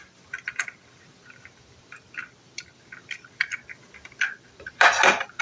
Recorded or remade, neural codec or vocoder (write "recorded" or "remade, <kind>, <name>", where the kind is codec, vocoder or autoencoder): remade, vocoder, BigVGAN v2